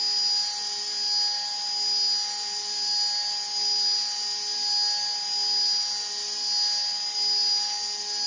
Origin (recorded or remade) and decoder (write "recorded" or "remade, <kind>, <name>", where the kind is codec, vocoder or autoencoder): recorded